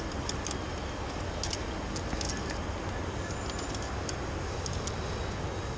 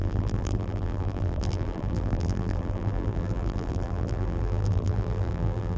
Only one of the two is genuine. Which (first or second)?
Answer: first